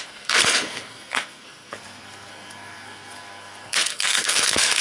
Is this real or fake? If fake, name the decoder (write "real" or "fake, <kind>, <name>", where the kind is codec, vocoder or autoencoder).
fake, codec, SNAC